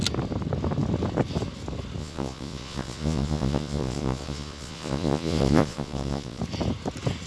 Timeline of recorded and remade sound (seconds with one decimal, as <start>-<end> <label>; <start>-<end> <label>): 0.0-2.0 recorded; 2.0-6.4 remade; 6.4-7.3 recorded